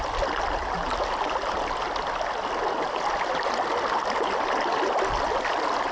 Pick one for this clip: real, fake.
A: real